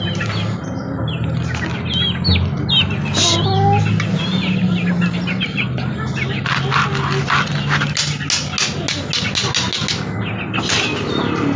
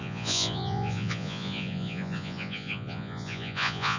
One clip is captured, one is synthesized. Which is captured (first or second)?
first